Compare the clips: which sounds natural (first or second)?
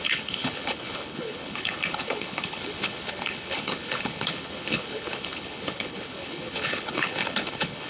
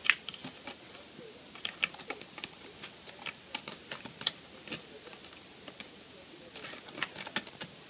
second